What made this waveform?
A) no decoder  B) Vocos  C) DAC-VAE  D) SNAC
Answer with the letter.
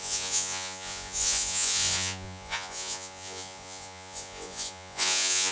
B